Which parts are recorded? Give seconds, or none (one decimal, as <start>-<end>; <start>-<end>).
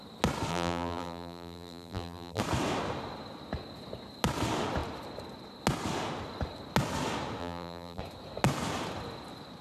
0.0-0.5; 2.4-7.4; 8.0-9.6